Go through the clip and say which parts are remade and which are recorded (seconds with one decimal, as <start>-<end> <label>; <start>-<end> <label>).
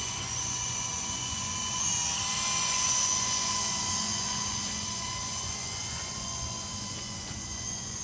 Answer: 0.0-1.9 remade; 1.9-2.6 recorded; 2.6-8.0 remade